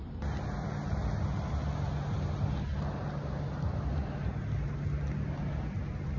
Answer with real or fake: real